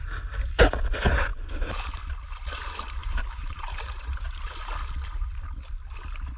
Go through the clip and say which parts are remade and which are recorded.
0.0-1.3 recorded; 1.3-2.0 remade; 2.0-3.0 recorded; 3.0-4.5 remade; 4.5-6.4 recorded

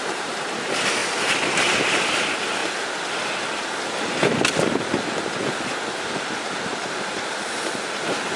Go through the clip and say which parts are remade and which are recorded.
0.0-2.6 remade; 2.6-6.1 recorded; 6.1-8.4 remade

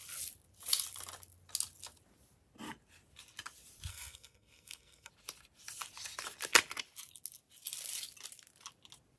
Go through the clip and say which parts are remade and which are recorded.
0.0-3.9 recorded; 3.9-5.1 remade; 5.1-9.2 recorded